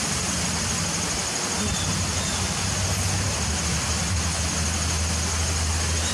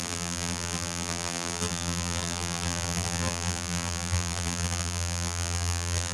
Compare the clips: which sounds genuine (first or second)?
first